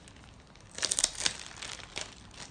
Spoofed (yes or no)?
no